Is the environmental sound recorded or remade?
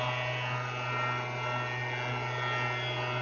recorded